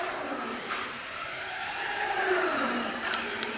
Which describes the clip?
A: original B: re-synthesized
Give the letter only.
B